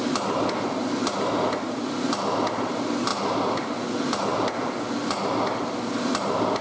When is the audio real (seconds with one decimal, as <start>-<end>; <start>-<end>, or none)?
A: 0.0-6.6